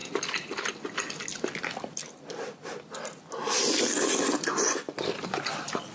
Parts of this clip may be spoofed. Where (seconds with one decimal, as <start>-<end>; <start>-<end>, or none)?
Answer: 0.0-0.7